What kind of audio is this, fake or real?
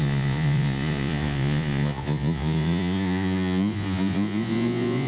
fake